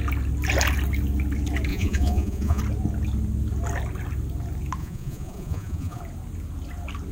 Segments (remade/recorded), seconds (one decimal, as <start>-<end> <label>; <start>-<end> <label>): 0.0-1.7 recorded; 1.7-2.6 remade; 2.6-4.8 recorded; 4.8-6.0 remade; 6.0-7.1 recorded